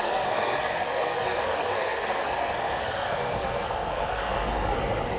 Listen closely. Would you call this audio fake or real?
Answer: fake